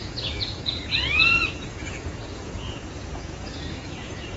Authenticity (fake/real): fake